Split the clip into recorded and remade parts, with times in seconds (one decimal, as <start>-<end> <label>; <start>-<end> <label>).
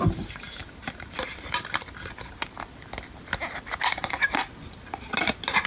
0.0-0.6 remade; 0.6-4.0 recorded; 4.0-4.4 remade; 4.4-5.7 recorded